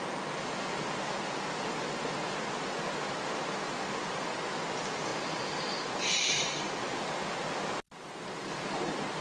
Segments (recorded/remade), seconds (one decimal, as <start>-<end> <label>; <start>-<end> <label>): 0.0-9.2 recorded